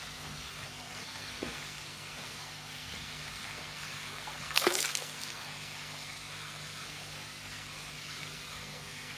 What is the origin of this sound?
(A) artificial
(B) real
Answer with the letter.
A